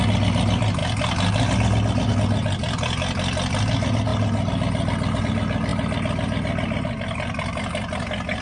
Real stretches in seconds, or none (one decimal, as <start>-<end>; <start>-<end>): 0.0-8.4